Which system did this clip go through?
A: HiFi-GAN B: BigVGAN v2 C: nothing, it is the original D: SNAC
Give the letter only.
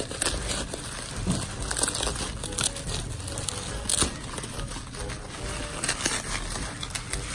C